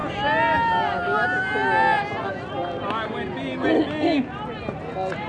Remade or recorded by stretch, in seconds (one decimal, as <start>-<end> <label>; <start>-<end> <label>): 0.0-5.3 recorded